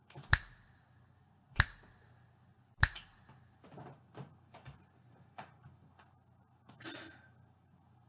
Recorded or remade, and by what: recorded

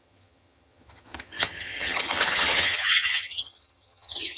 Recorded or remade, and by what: remade, vocoder, HiFi-GAN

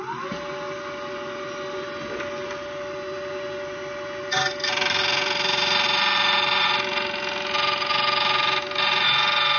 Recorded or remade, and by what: recorded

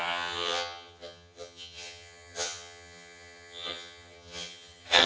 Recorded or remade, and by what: remade, vocoder, HiFi-GAN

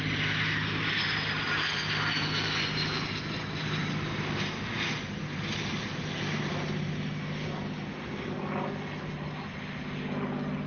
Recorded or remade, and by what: recorded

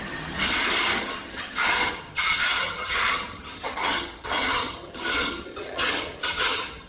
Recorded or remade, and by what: remade, vocoder, HiFi-GAN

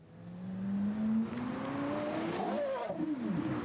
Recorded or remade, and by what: recorded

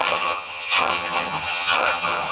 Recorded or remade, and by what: remade, vocoder, HiFi-GAN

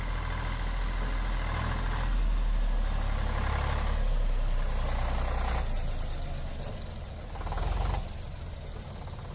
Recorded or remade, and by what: recorded